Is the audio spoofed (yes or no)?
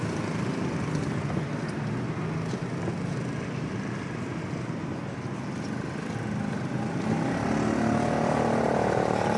no